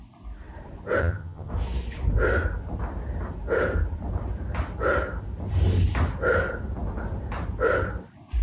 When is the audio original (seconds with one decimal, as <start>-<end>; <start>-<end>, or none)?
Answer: 0.0-1.0; 1.5-8.4